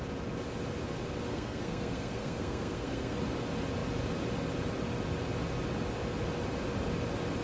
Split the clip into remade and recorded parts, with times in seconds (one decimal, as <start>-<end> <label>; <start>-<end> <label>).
0.0-1.3 recorded; 1.3-3.2 remade; 3.2-7.4 recorded

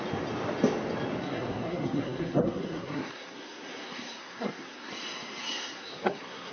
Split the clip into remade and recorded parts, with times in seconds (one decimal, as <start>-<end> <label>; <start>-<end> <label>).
0.0-1.2 recorded; 1.2-4.9 remade; 4.9-5.4 recorded; 5.4-6.5 remade

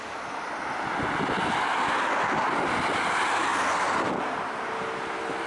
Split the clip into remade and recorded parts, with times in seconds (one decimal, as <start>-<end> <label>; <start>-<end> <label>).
0.0-5.5 recorded

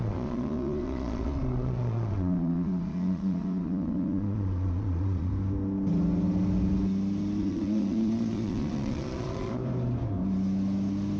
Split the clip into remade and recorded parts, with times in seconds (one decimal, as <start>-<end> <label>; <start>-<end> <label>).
0.0-5.3 remade; 5.3-7.4 recorded; 7.4-9.6 remade; 9.6-11.2 recorded